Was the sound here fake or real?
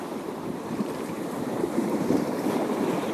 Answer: fake